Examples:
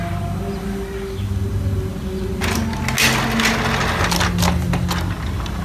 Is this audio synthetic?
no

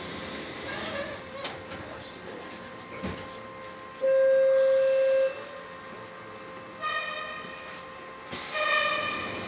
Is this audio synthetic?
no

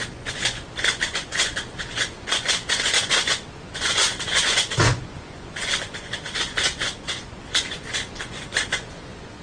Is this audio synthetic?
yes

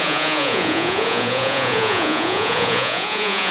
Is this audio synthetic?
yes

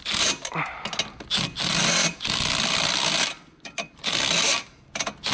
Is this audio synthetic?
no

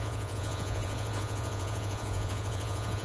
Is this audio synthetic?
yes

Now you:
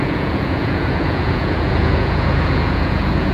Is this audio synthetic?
yes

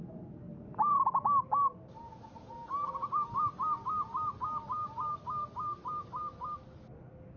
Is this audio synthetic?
no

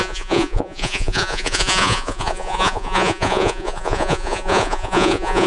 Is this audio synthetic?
yes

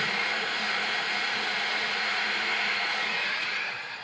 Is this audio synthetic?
yes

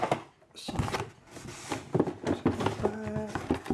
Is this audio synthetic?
no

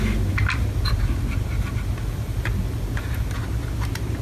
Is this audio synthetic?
no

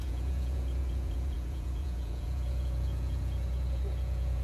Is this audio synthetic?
yes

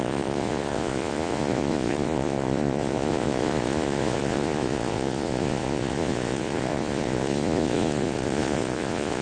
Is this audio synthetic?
yes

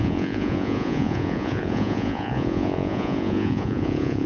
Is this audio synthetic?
yes